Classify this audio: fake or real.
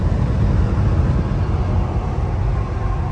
real